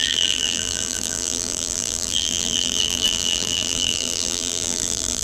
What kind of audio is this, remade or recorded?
remade